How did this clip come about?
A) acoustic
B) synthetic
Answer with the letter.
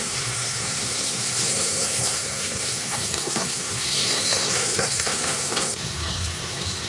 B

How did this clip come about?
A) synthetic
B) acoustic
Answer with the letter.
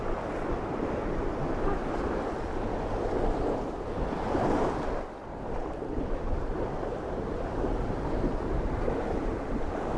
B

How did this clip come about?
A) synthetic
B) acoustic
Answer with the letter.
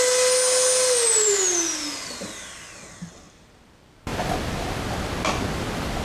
B